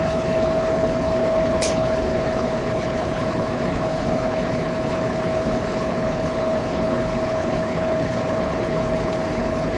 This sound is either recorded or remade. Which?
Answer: remade